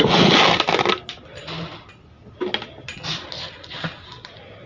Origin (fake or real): real